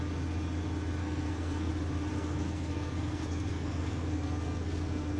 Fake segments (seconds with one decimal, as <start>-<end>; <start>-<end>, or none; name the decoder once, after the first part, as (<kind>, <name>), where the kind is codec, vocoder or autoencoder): 1.0-1.7 (codec, SNAC); 2.1-5.2